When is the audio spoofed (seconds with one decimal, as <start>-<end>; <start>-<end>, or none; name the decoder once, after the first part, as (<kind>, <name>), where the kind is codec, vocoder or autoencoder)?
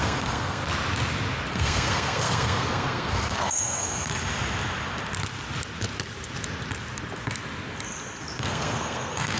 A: 0.0-0.6 (codec, SNAC); 1.5-4.1; 8.4-9.4